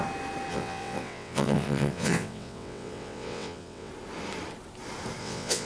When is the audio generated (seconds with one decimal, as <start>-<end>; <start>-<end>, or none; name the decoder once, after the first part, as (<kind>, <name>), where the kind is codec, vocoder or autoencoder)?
0.5-3.9 (vocoder, WaveNeXt); 5.2-5.7